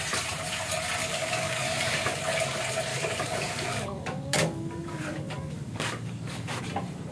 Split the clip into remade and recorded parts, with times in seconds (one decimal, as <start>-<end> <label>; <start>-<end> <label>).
0.0-1.0 recorded; 1.0-2.2 remade; 2.2-2.9 recorded; 2.9-6.6 remade; 6.6-7.1 recorded